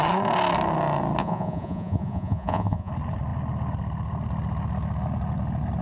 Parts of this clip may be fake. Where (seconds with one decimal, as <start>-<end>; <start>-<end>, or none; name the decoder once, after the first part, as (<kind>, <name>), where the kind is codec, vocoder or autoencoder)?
1.2-2.9 (vocoder, Vocos)

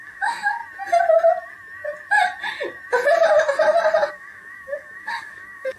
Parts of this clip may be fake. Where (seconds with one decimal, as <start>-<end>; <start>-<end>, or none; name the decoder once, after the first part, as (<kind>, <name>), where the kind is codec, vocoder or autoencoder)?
0.0-0.6 (codec, DAC); 4.1-5.8

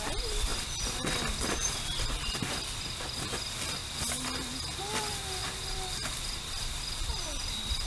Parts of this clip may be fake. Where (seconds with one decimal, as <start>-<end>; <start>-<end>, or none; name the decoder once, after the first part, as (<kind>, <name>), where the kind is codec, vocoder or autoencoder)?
0.0-3.8 (vocoder, BigVGAN v2); 4.8-7.9

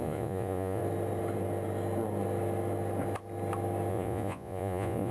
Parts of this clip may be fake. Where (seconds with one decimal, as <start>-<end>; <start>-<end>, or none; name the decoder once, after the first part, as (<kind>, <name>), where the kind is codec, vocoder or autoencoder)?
0.0-0.8 (vocoder, Vocos); 3.9-5.1